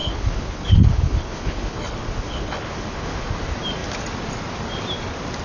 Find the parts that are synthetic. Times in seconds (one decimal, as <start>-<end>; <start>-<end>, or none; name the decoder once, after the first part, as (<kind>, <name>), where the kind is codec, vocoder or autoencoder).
0.0-3.2 (codec, HILCodec)